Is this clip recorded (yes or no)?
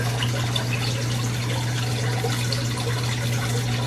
yes